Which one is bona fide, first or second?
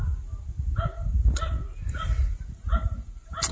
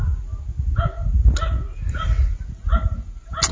second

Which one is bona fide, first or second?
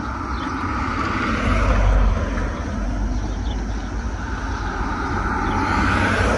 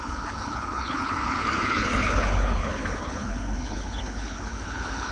first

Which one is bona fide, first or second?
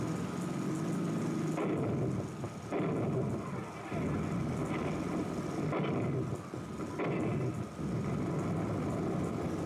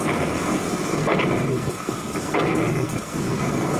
first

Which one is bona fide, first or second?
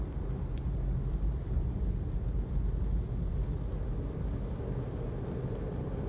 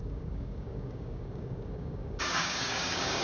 first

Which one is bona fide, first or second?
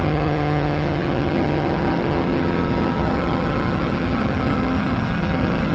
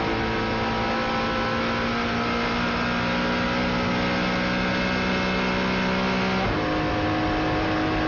second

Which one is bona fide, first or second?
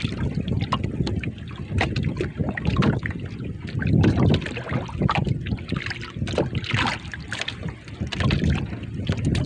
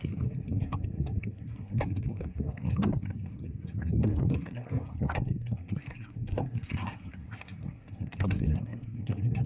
first